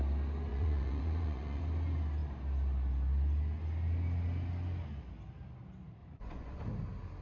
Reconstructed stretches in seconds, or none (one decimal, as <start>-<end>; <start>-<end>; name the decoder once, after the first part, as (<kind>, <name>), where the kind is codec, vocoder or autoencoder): 0.5-1.6 (vocoder, Vocos); 6.0-6.7